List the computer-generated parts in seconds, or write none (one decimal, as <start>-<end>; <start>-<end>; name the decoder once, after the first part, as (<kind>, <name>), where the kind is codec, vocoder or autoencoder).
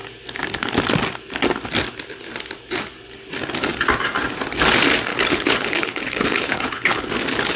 5.1-7.1 (codec, HILCodec)